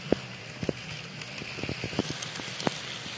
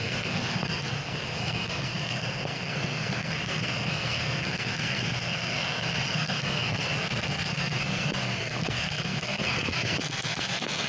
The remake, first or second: second